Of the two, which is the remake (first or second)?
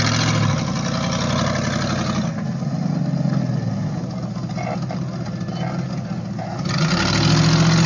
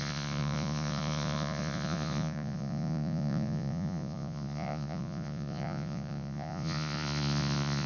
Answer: second